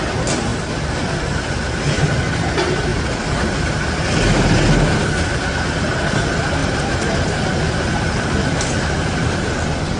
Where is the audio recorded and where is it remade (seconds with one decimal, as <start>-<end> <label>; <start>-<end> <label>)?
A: 0.0-0.5 recorded; 0.5-2.4 remade; 2.4-6.6 recorded; 6.6-9.5 remade; 9.5-10.0 recorded